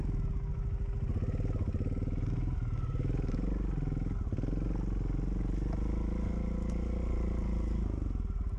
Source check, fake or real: real